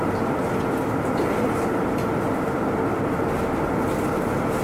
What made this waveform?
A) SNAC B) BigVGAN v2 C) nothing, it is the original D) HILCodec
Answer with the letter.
C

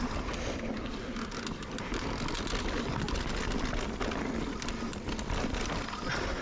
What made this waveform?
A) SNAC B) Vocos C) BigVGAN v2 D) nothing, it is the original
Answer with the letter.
D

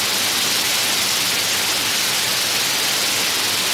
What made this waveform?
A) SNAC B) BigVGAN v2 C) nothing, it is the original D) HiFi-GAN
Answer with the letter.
B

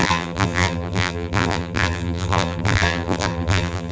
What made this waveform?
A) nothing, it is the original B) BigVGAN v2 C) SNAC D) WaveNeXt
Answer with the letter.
B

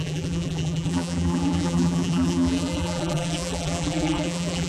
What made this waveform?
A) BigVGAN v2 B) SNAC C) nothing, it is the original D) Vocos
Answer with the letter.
A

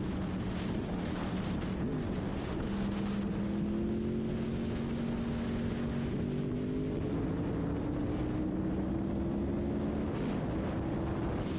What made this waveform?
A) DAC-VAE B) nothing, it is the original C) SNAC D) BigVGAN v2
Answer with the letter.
B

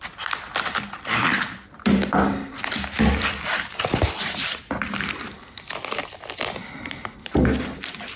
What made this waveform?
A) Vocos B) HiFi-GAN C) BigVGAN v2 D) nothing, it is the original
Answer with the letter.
C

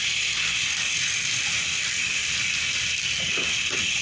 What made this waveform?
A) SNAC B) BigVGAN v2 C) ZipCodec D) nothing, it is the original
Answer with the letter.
D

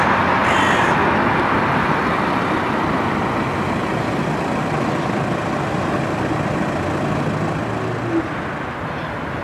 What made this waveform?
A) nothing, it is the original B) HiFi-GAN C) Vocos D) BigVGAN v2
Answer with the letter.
A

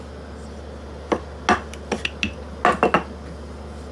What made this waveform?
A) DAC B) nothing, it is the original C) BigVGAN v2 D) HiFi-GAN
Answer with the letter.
B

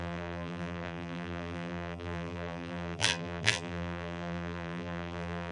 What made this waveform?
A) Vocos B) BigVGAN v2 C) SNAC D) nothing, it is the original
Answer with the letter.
B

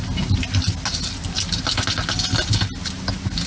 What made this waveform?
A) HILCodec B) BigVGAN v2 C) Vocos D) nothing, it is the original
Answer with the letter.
D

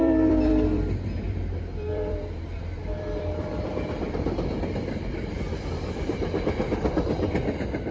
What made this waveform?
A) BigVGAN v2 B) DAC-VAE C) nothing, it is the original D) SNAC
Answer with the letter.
A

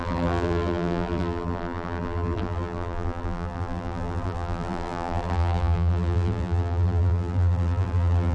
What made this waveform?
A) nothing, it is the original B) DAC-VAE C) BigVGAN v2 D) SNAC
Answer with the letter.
C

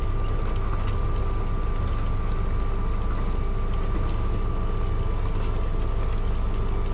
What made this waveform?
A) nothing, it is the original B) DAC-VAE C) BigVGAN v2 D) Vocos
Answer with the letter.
A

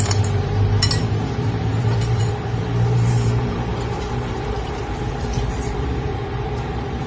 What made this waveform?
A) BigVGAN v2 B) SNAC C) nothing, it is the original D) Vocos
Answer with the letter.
A